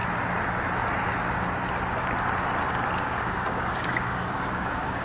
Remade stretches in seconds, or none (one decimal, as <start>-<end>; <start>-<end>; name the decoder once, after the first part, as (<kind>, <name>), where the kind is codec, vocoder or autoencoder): 3.0-5.0 (codec, DAC)